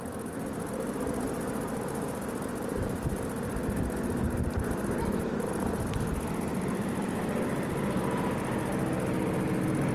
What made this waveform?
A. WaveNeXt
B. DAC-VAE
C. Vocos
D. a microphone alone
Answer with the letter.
D